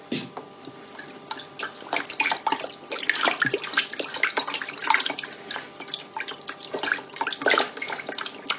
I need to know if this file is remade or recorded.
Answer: recorded